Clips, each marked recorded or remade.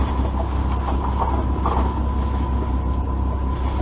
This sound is recorded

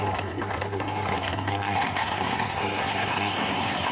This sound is remade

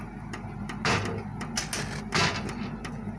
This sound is recorded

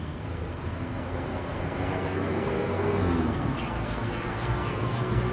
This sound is remade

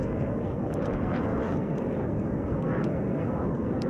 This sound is remade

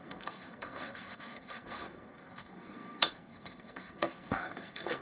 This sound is remade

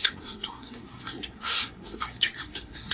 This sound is remade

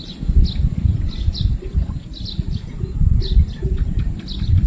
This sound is recorded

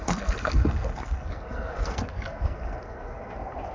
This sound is remade